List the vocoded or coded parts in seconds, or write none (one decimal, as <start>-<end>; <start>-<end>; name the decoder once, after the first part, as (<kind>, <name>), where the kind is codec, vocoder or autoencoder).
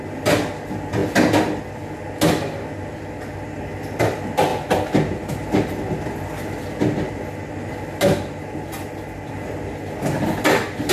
none